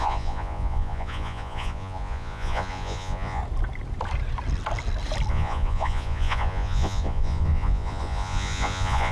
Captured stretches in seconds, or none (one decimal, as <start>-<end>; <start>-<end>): 3.4-5.3